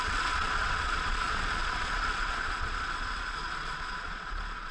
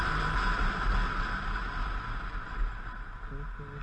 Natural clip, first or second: second